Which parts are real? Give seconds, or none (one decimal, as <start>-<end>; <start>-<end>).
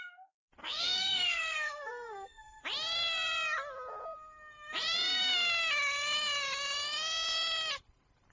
0.0-0.6; 2.6-8.3